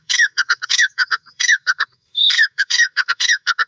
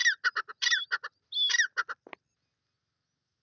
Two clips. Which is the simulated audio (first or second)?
first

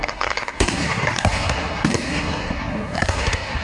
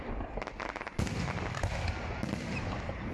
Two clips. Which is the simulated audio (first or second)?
first